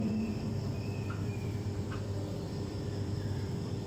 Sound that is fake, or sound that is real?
fake